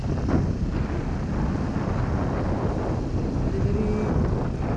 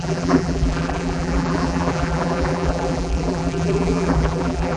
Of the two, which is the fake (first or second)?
second